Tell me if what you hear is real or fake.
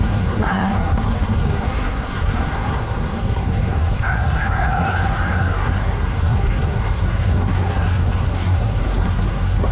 fake